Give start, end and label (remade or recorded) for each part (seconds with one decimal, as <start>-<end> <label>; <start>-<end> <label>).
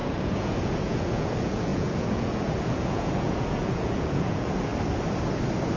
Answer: 0.0-4.7 remade; 4.7-5.8 recorded